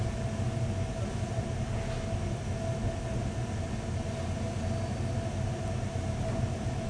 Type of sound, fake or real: real